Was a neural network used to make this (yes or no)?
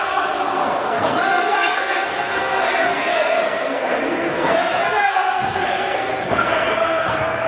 yes